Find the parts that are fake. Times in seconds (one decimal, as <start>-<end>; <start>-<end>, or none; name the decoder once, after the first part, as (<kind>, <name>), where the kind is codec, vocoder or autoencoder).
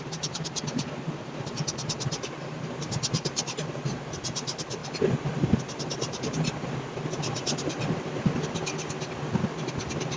0.0-4.8 (vocoder, BigVGAN v2)